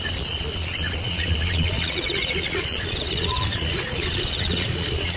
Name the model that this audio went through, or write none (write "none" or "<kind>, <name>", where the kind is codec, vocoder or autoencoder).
vocoder, Vocos